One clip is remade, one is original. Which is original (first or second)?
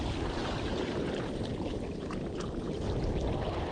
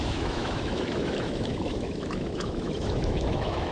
first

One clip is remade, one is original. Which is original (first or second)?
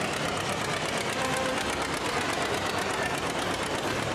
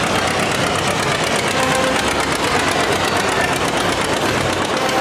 second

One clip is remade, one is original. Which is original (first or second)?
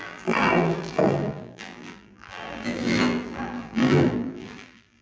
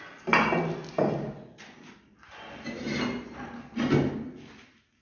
second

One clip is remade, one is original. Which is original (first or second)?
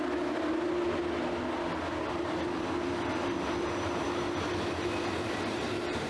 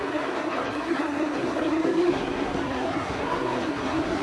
first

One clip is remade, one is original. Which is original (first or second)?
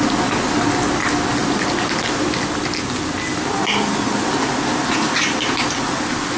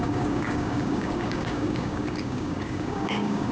first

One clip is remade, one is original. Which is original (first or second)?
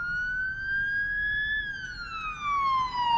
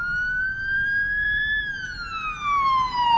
first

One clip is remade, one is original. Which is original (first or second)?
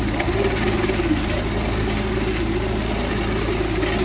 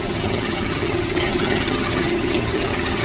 first